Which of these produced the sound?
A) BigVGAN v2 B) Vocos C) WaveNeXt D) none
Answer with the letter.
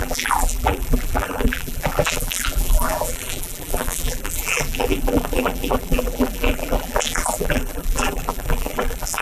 A